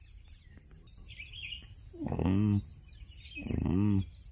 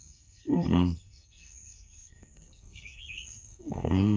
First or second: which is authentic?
first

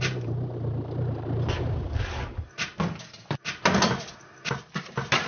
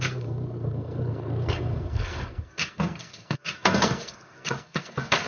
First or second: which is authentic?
first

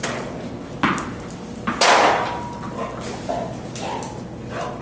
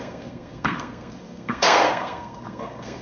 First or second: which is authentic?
first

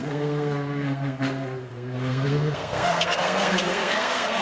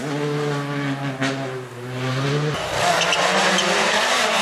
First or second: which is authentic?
second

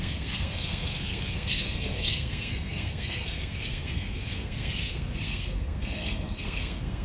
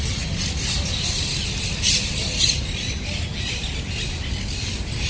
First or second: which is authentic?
second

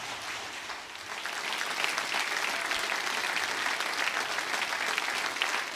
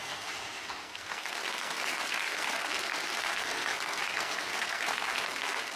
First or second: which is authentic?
first